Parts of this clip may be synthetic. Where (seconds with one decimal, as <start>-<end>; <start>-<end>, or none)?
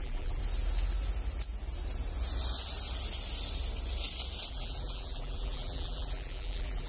0.0-0.4; 4.5-6.9